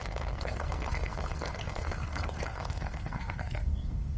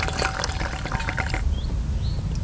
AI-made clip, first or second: first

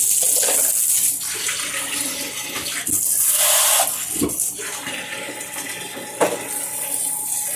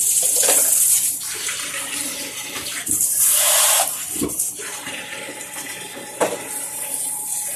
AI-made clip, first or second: second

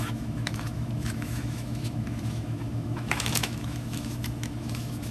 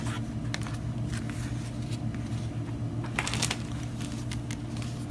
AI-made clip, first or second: first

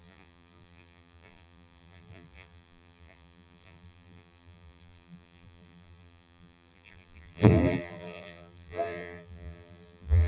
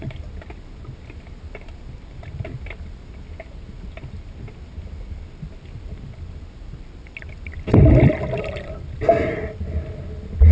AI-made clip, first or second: first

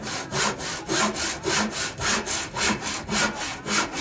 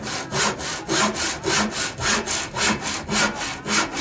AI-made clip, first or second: first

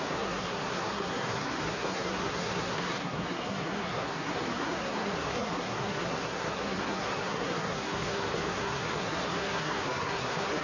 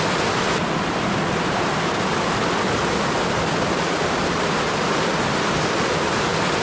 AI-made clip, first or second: first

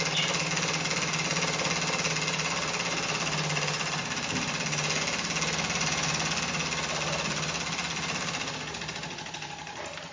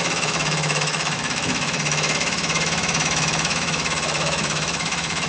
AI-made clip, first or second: second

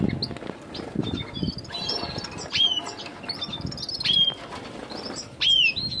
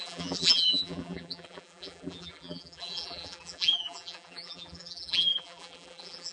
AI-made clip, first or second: second